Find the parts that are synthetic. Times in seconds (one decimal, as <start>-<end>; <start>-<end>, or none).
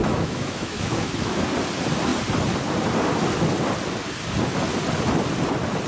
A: 0.0-1.4